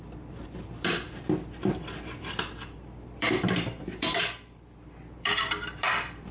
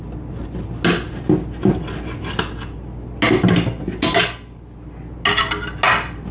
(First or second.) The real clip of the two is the second